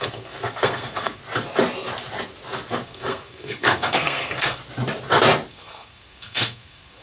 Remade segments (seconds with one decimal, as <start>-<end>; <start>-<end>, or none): 0.0-1.2; 2.7-4.6; 5.5-7.0